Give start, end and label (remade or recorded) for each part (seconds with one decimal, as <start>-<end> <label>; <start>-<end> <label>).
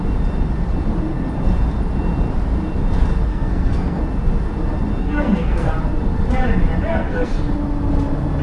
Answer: 0.0-3.3 recorded; 3.3-4.0 remade; 4.0-5.0 recorded; 5.0-5.7 remade; 5.7-6.9 recorded; 6.9-7.5 remade; 7.5-8.4 recorded